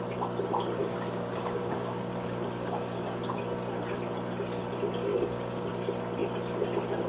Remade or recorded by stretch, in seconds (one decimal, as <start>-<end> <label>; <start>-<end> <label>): 0.0-0.8 recorded; 0.8-3.4 remade; 3.4-5.1 recorded; 5.1-5.7 remade; 5.7-7.1 recorded